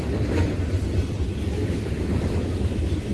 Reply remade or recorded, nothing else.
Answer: remade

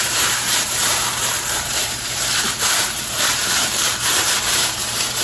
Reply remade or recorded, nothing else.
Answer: remade